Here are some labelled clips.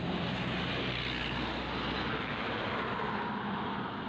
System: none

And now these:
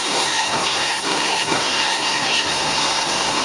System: codec, SNAC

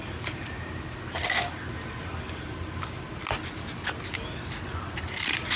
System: none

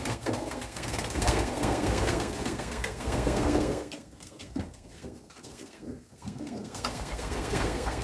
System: codec, SNAC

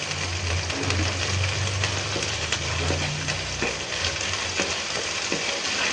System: none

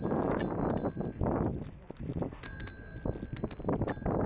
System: none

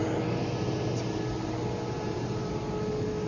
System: none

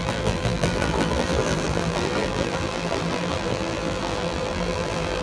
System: vocoder, BigVGAN v2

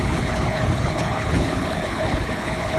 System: codec, HILCodec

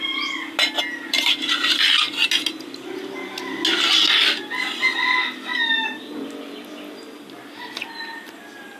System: none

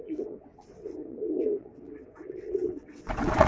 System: vocoder, WaveNeXt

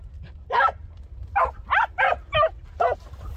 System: none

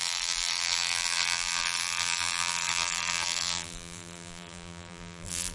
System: vocoder, BigVGAN v2